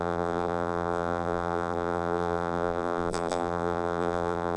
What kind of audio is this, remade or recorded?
remade